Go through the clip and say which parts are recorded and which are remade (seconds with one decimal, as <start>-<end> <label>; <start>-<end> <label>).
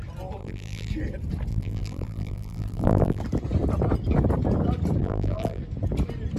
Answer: 0.0-0.4 recorded; 0.4-0.9 remade; 0.9-1.5 recorded; 1.5-3.2 remade; 3.2-5.0 recorded; 5.0-5.6 remade; 5.6-6.4 recorded